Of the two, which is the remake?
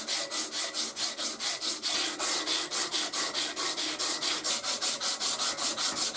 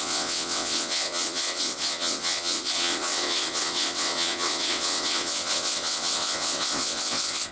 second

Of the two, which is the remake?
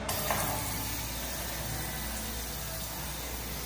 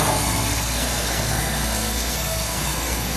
second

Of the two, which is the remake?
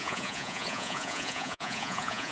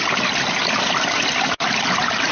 first